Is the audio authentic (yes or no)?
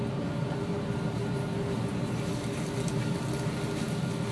yes